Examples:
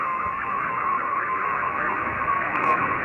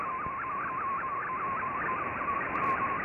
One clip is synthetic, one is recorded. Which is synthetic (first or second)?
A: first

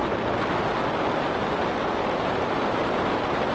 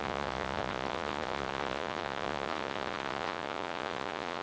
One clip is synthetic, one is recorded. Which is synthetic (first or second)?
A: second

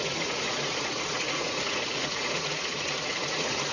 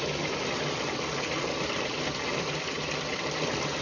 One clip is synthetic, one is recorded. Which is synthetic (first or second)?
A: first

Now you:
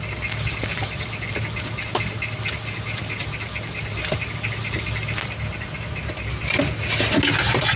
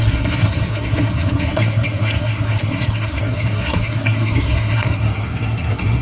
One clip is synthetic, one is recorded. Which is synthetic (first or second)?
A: second